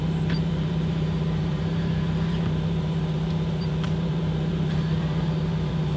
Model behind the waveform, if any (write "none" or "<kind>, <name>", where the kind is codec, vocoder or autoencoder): vocoder, BigVGAN v2